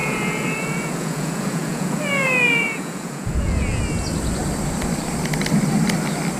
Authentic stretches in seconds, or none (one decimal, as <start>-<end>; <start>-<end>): 3.8-6.4